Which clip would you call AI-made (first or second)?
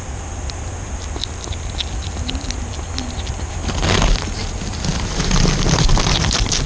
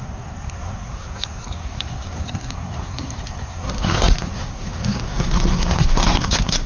second